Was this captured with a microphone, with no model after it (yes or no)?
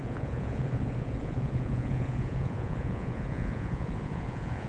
no